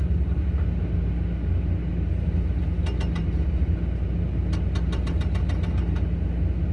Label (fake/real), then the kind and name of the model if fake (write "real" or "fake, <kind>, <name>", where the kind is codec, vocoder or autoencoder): real